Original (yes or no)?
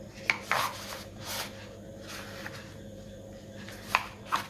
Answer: yes